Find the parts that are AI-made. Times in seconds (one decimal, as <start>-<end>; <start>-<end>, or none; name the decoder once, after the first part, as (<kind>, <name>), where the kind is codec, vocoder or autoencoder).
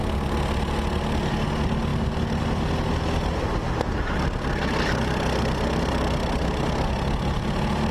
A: none